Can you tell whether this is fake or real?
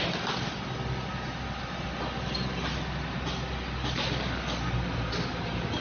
real